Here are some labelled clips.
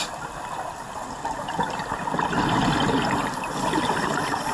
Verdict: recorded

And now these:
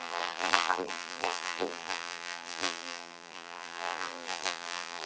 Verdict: remade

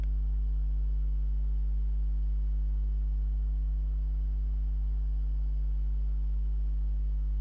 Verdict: recorded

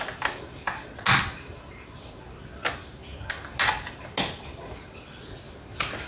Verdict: recorded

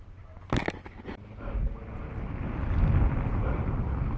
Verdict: recorded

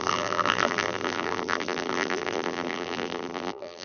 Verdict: remade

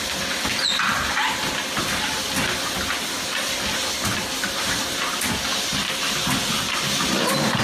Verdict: recorded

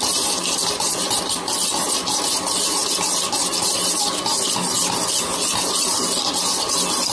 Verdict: recorded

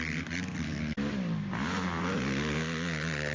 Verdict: recorded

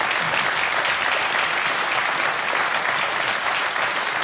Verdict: recorded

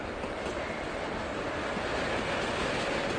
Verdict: remade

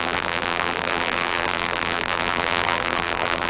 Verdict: remade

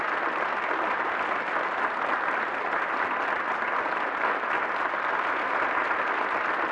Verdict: recorded